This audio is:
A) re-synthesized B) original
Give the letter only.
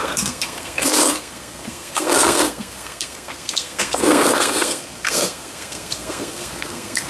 A